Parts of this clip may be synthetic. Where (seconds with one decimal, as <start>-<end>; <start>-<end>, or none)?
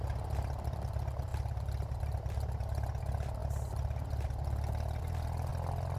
0.0-5.5